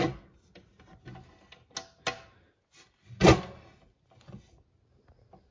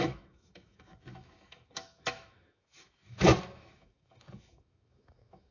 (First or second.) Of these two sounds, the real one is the first